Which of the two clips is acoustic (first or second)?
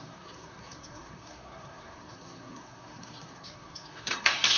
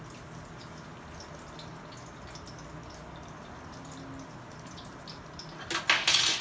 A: second